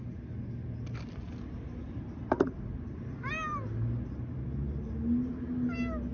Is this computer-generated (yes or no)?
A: no